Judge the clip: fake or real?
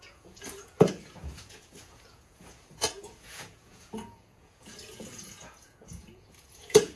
fake